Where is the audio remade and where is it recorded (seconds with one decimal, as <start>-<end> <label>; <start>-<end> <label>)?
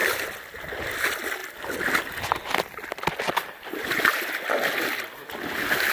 0.0-5.9 recorded